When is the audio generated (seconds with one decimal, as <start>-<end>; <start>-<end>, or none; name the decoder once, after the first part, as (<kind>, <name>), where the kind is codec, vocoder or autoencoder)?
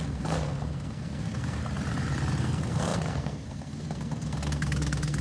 0.0-1.6 (codec, SNAC); 2.4-5.2